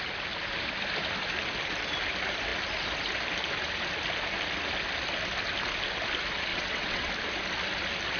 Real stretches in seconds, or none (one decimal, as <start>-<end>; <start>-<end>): 0.0-6.5; 7.1-8.2

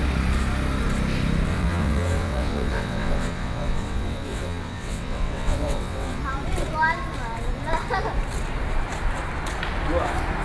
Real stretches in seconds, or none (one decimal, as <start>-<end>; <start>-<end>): 0.0-1.5; 6.2-10.4

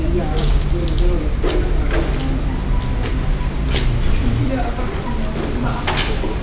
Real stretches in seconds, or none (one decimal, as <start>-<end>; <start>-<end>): 0.0-6.4

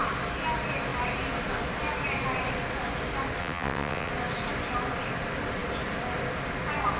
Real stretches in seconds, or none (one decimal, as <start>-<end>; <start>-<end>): 0.0-3.4; 4.1-7.0